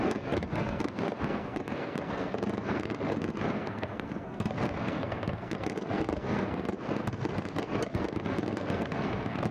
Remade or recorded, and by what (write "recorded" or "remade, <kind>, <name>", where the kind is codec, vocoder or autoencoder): remade, codec, SNAC